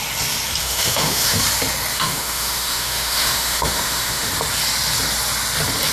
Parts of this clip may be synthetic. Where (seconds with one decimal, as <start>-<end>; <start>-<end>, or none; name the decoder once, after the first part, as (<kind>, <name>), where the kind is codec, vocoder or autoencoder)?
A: 0.6-1.4 (autoencoder, DAC-VAE); 1.9-4.3